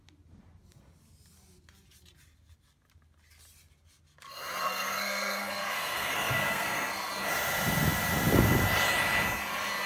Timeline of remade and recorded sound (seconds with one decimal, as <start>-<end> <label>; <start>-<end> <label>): 0.0-4.6 recorded; 4.6-7.1 remade; 7.1-9.9 recorded